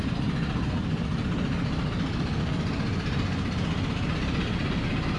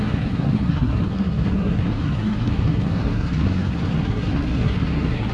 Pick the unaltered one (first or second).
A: first